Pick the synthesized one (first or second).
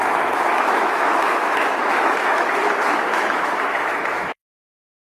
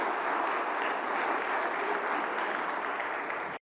first